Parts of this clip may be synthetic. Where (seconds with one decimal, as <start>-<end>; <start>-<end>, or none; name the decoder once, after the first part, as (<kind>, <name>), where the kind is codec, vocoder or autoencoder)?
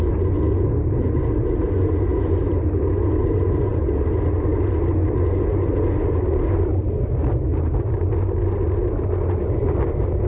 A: 2.1-3.1 (vocoder, BigVGAN v2)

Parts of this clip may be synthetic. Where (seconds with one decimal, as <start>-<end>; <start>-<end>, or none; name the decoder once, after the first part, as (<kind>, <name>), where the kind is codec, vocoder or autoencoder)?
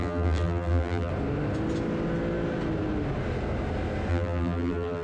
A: 0.0-1.1 (vocoder, BigVGAN v2); 4.1-5.0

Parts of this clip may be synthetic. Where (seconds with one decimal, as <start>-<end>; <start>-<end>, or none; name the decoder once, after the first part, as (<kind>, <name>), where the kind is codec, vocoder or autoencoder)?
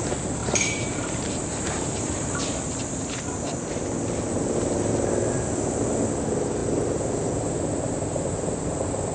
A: 0.4-2.4 (vocoder, BigVGAN v2)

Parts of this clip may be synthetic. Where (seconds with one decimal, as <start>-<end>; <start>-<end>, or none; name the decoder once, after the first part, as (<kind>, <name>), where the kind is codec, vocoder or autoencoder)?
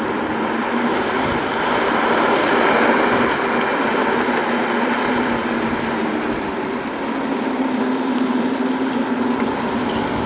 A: 0.0-10.3 (vocoder, BigVGAN v2)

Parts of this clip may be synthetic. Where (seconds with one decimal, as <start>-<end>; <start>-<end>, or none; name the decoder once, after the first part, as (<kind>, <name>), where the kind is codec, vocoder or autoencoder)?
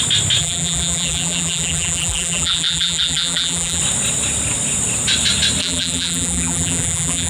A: 0.4-3.8 (vocoder, BigVGAN v2); 5.6-7.3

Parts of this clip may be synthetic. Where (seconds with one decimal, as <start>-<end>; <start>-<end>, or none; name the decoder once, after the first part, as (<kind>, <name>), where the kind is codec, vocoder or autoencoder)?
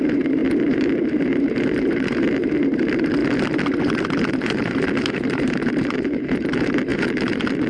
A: 0.0-7.7 (vocoder, BigVGAN v2)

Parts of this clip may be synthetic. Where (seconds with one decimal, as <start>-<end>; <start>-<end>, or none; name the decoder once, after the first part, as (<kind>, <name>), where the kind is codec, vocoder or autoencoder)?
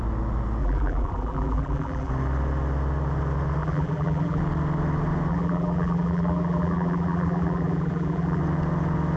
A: 0.6-2.1 (vocoder, BigVGAN v2); 3.6-4.4; 5.3-8.4